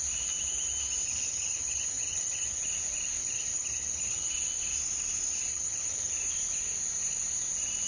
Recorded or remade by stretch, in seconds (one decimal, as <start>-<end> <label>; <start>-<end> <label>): 0.0-1.0 recorded; 1.0-2.6 remade; 2.6-3.2 recorded; 3.2-4.3 remade; 4.3-5.5 recorded; 5.5-6.1 remade; 6.1-7.9 recorded